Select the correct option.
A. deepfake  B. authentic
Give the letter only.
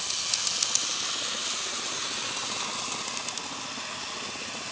B